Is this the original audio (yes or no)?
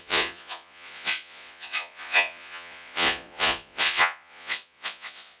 no